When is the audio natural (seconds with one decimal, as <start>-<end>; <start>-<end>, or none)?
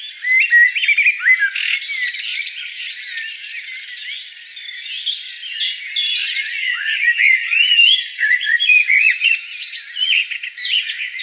0.0-2.3; 2.9-6.2